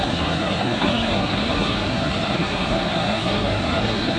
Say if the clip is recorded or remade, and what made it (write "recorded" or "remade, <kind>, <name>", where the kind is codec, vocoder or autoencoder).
remade, codec, SNAC